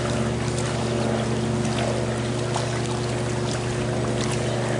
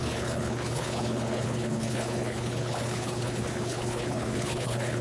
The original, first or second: first